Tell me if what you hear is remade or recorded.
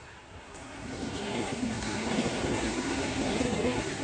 remade